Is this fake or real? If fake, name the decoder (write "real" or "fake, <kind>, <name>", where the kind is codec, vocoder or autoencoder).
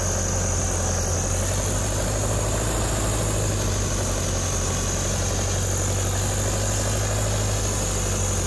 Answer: real